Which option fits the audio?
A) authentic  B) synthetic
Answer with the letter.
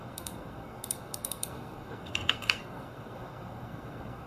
B